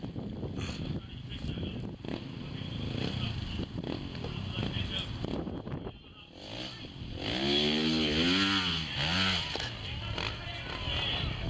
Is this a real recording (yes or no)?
yes